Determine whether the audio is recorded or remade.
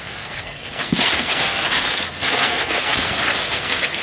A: remade